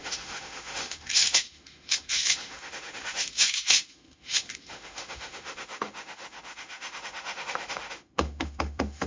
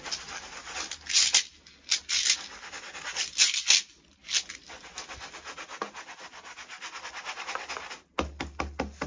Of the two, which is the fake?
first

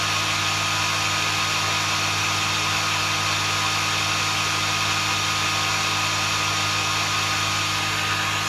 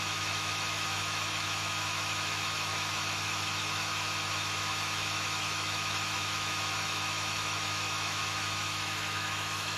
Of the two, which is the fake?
second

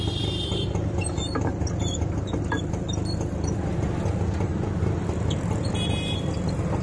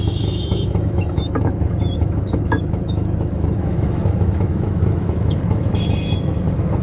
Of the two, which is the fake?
second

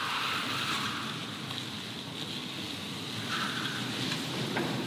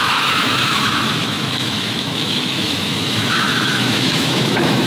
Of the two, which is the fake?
second